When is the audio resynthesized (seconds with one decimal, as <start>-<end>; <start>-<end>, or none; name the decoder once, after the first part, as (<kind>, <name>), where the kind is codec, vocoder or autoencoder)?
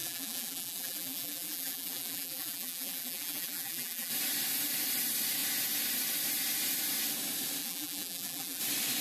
0.0-4.1 (vocoder, BigVGAN v2); 7.6-8.6